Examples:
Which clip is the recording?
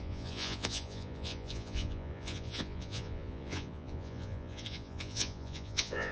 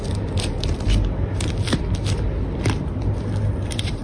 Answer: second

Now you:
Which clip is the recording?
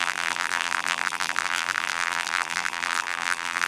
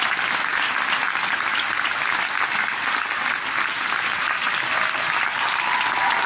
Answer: second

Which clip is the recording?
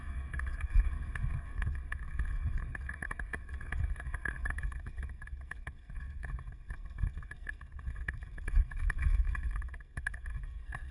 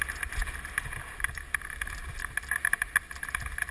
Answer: second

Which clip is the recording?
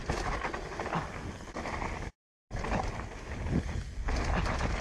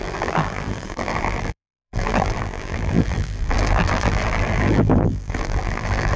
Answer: first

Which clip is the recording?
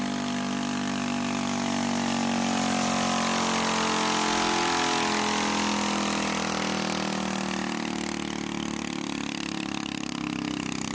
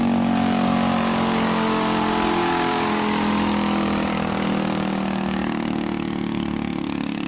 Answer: first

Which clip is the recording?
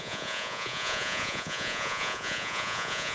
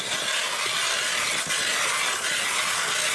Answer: second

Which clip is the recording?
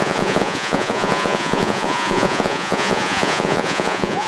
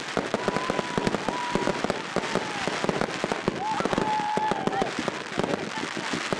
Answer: second